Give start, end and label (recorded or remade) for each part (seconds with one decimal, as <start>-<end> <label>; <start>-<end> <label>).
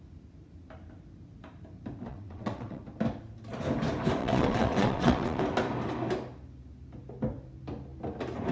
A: 0.0-2.1 recorded; 2.1-2.8 remade; 2.8-4.2 recorded; 4.2-5.4 remade; 5.4-8.5 recorded